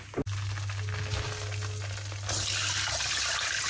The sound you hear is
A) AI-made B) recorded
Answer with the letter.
B